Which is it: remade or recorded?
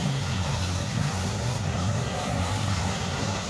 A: remade